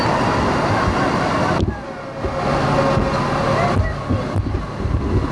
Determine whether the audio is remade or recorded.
recorded